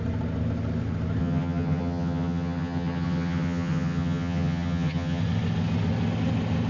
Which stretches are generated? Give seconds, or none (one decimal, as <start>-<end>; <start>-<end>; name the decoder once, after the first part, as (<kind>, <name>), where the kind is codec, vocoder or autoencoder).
1.2-5.2 (vocoder, HiFi-GAN)